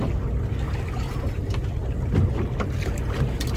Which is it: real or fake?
real